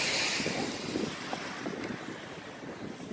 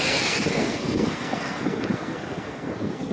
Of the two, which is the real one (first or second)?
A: first